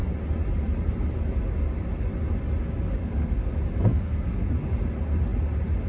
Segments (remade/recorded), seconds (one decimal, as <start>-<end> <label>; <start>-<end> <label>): 0.0-3.0 recorded; 3.0-3.5 remade; 3.5-3.9 recorded; 3.9-4.5 remade; 4.5-5.9 recorded